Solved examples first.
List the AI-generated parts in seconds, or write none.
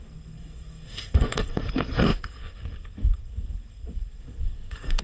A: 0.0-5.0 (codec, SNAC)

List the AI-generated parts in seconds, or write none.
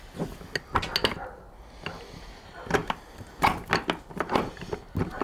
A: none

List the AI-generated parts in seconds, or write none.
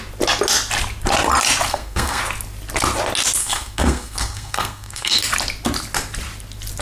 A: 1.7-2.2 (codec, SNAC); 3.4-5.2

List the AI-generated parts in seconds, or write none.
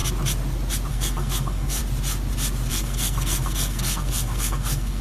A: 0.9-1.8 (codec, SNAC); 2.7-5.0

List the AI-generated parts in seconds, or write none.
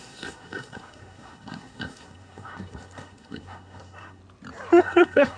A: 0.0-4.2 (codec, SNAC); 4.8-5.4